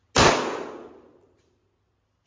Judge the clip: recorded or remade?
recorded